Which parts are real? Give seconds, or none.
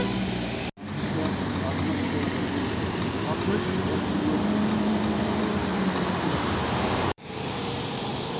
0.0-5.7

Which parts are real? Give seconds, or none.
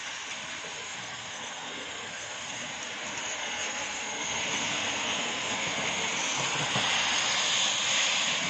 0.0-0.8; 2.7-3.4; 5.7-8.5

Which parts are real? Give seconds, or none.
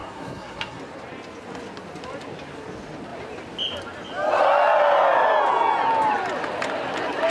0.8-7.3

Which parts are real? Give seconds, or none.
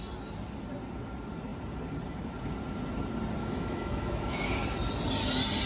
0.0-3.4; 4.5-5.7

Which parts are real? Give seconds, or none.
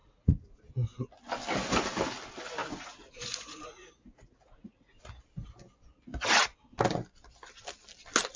0.6-2.6; 5.0-8.4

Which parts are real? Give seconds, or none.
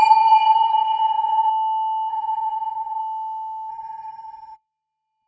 1.5-2.1; 3.0-3.7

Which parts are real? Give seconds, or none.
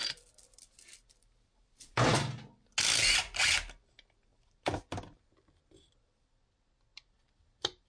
0.0-4.3; 4.8-7.9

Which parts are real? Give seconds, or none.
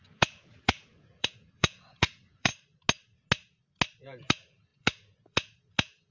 2.5-4.0